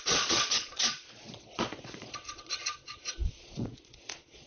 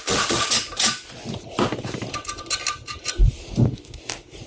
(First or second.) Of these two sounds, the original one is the second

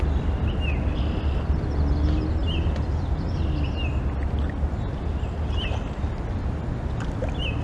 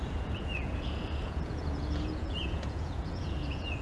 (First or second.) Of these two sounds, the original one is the first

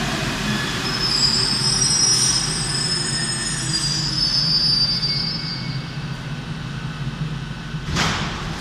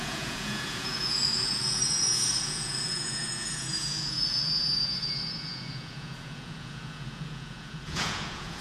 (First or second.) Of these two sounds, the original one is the first